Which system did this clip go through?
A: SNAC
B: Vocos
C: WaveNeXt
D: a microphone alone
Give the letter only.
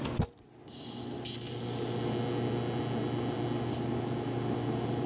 D